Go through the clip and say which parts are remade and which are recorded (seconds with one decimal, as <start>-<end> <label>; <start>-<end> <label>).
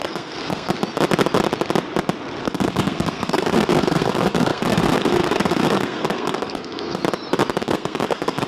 0.0-0.7 remade; 0.7-2.4 recorded; 2.4-7.0 remade; 7.0-7.6 recorded; 7.6-8.5 remade